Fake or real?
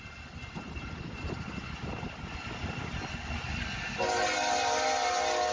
real